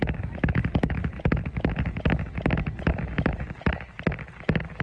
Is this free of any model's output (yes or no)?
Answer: yes